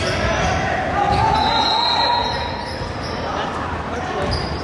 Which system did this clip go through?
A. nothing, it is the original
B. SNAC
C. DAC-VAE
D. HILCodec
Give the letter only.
A